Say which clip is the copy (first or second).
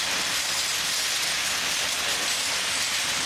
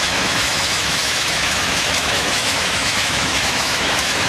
second